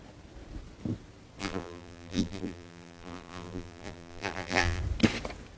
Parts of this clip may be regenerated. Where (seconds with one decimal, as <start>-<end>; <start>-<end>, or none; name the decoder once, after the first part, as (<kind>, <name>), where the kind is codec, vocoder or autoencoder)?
1.4-4.8 (vocoder, BigVGAN v2)